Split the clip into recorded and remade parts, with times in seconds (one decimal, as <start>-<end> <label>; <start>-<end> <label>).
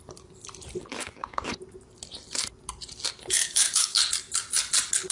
0.0-0.9 recorded; 0.9-1.5 remade; 1.5-3.4 recorded; 3.4-4.0 remade; 4.0-5.1 recorded